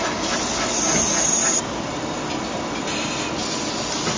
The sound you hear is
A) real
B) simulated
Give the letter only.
A